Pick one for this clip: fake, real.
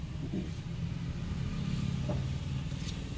real